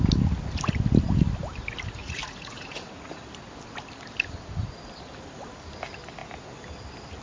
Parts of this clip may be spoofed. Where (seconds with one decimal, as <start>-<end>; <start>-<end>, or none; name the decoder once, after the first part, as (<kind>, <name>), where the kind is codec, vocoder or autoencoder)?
2.0-3.2 (vocoder, Vocos)